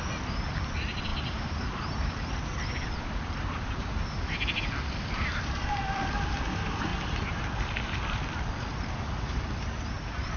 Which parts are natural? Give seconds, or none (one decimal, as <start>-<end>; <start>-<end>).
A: 6.9-7.5

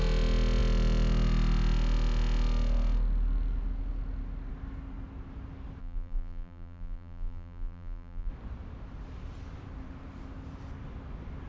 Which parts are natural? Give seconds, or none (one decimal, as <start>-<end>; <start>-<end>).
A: 0.0-5.8; 8.3-11.5